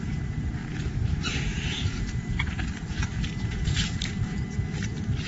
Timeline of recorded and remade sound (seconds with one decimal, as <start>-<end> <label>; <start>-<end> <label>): 0.0-0.6 remade; 0.6-3.3 recorded; 3.3-5.3 remade